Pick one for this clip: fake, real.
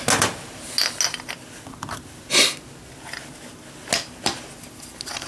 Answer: real